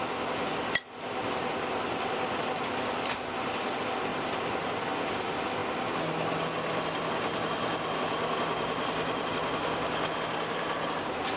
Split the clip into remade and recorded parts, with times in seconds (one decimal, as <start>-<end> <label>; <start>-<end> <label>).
0.0-1.2 recorded; 1.2-1.8 remade; 1.8-4.1 recorded; 4.1-4.7 remade; 4.7-11.4 recorded